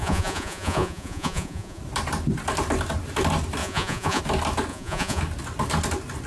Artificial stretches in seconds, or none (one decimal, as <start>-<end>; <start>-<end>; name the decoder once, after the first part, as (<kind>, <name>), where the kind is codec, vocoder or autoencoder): 0.0-1.8 (vocoder, Vocos); 3.6-4.2; 4.7-5.2